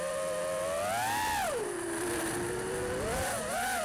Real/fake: real